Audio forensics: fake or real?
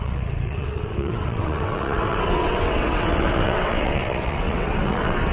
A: fake